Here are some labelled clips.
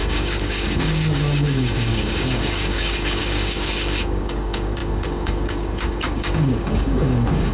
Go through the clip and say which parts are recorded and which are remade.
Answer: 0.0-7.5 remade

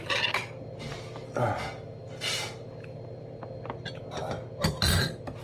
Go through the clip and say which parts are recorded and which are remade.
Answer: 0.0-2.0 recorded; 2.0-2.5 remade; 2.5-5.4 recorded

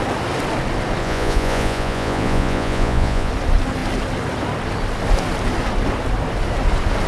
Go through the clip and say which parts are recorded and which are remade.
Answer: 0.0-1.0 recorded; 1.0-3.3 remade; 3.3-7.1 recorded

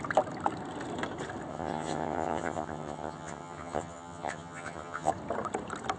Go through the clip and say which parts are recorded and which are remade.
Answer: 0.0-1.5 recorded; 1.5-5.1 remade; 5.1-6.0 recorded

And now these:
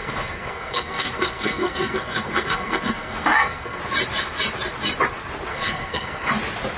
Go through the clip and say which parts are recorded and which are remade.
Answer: 0.0-3.8 remade; 3.8-5.5 recorded; 5.5-6.3 remade; 6.3-6.8 recorded